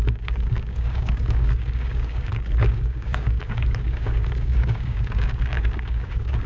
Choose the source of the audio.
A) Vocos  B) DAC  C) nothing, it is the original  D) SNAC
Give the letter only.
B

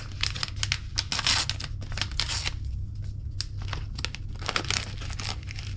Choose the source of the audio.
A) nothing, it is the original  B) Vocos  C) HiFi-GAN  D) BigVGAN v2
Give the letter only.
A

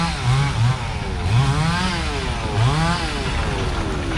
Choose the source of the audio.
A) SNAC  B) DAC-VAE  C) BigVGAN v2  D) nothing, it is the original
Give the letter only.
D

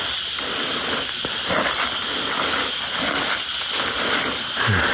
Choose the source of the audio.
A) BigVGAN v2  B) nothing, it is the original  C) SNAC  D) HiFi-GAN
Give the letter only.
B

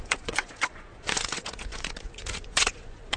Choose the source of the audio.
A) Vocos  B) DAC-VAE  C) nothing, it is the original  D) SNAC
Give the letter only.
A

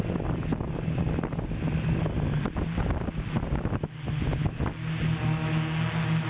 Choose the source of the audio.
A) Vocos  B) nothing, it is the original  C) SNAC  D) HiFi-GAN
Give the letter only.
B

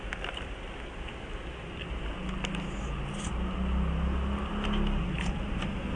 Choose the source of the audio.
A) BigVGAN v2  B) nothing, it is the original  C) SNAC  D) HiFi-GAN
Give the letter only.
B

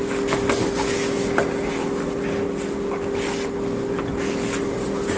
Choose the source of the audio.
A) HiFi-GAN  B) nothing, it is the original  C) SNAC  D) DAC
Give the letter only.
B